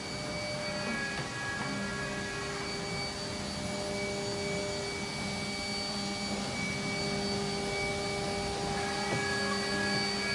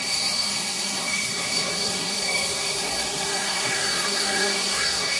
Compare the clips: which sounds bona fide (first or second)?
first